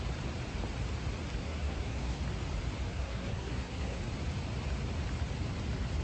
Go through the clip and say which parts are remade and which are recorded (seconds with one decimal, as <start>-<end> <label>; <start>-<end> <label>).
0.0-1.4 recorded; 1.4-2.2 remade; 2.2-2.9 recorded; 2.9-4.0 remade; 4.0-6.0 recorded